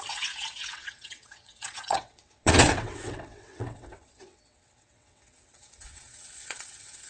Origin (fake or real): fake